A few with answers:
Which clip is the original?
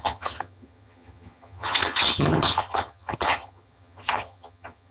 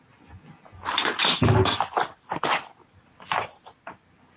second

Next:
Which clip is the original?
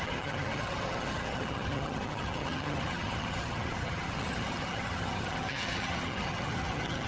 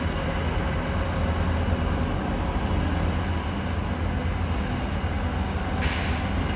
second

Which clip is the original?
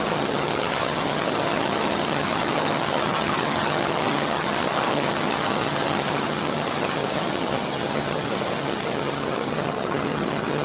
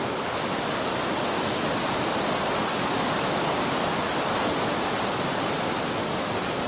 second